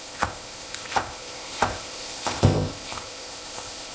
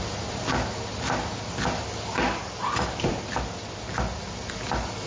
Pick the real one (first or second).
second